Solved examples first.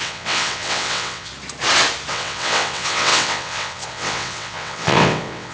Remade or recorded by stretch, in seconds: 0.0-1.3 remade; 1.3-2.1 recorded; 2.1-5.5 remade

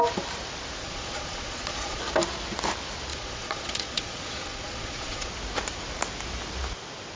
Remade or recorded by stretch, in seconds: 0.0-0.8 recorded; 0.8-2.0 remade; 2.0-3.1 recorded; 3.1-5.3 remade; 5.3-7.2 recorded

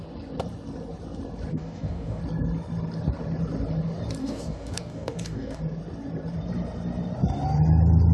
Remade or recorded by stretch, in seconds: 0.0-1.5 recorded; 1.5-2.2 remade; 2.2-4.2 recorded; 4.2-5.6 remade; 5.6-8.1 recorded

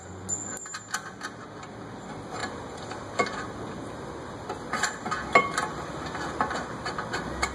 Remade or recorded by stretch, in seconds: 0.0-2.4 recorded; 2.4-6.9 remade; 6.9-7.5 recorded

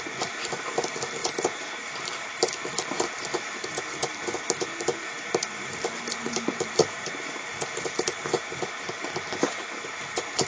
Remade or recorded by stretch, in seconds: 0.0-1.2 recorded; 1.2-3.2 remade; 3.2-5.6 recorded; 5.6-8.9 remade; 8.9-10.5 recorded